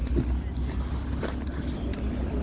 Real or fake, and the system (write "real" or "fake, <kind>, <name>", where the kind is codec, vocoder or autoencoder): real